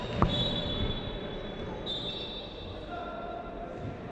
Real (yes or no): yes